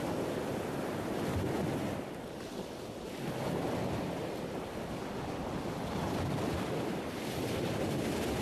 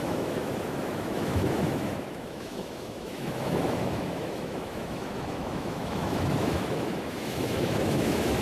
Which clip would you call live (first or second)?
first